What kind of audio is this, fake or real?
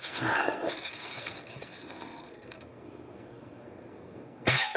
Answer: fake